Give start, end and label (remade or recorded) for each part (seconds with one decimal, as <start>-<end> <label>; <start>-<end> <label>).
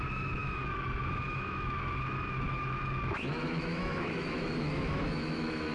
0.0-5.7 remade